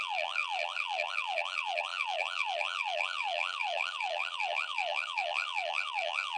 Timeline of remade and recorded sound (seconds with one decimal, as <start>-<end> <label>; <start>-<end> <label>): 0.0-6.4 remade